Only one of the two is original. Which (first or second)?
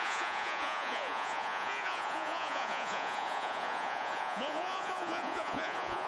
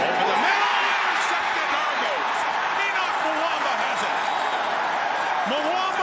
second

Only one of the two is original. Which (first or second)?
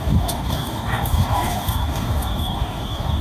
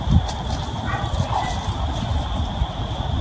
second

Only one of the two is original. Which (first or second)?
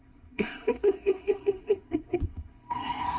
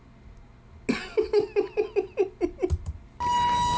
second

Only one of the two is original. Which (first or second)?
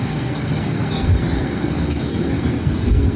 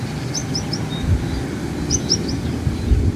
second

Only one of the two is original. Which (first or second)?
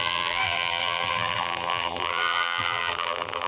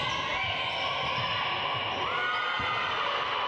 second